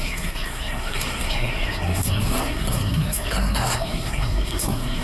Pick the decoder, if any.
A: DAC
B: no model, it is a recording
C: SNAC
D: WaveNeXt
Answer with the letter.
C